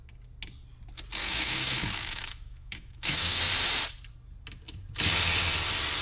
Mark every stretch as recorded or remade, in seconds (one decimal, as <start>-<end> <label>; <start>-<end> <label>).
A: 0.0-1.2 recorded; 1.2-3.4 remade; 3.4-6.0 recorded